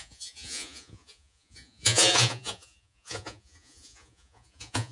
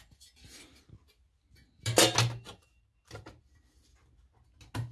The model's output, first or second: first